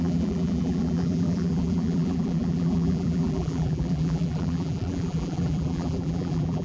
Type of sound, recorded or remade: remade